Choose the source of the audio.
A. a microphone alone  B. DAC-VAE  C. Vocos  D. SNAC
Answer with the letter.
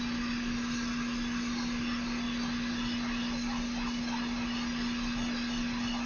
A